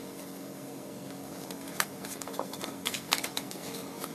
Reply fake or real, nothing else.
fake